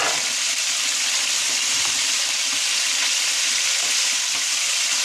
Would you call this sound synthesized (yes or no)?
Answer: no